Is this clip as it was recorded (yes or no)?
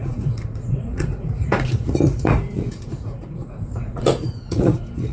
no